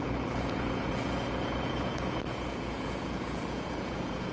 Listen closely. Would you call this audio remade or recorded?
remade